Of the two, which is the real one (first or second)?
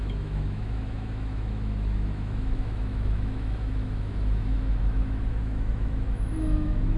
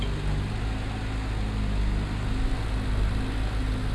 second